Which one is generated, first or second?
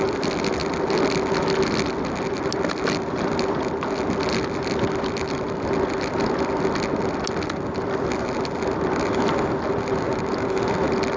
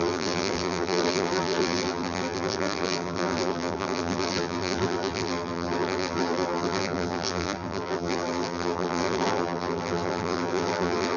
second